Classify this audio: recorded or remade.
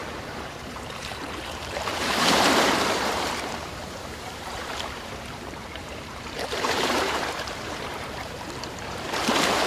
remade